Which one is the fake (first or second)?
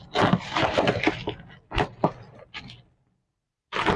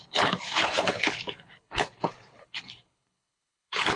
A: second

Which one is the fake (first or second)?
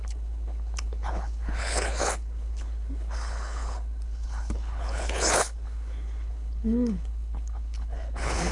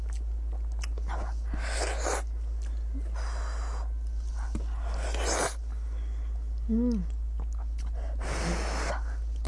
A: first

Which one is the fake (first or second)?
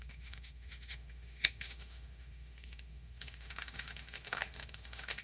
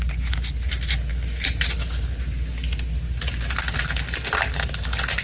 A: first